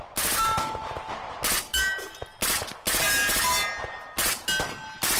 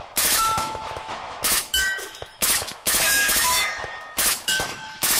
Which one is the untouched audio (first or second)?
first